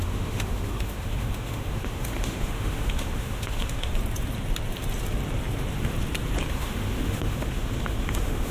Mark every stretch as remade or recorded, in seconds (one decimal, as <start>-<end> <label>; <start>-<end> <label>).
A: 0.0-3.9 remade; 3.9-6.5 recorded; 6.5-8.5 remade